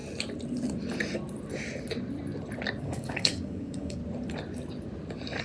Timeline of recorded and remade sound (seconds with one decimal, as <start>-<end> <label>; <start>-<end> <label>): 0.0-2.8 recorded; 2.8-4.0 remade; 4.0-5.4 recorded